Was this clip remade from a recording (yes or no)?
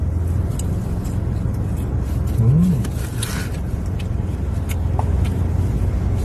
no